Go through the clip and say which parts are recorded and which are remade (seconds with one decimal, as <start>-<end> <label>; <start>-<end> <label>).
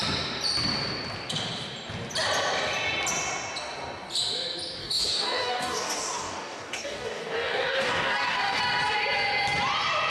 0.0-4.8 recorded; 4.8-8.6 remade; 8.6-10.1 recorded